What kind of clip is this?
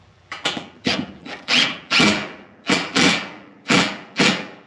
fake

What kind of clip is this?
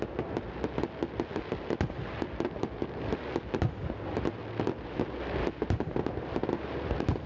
real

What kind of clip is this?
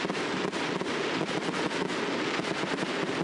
real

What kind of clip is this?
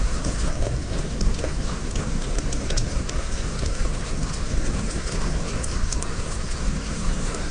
fake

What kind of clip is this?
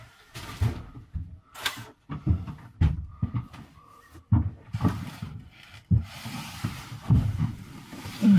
fake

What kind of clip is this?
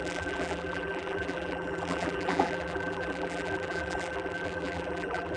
fake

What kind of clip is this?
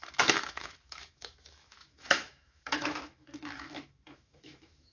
fake